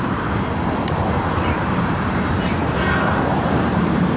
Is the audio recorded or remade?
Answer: remade